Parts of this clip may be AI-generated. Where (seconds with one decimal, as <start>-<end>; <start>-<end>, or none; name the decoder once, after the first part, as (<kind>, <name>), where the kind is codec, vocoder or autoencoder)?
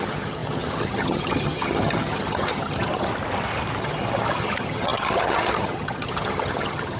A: 0.0-3.1 (vocoder, HiFi-GAN); 3.8-7.0